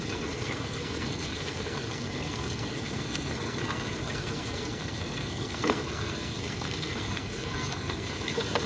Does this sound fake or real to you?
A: fake